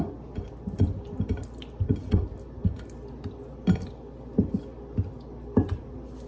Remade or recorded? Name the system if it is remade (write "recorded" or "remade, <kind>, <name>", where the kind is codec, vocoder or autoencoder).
recorded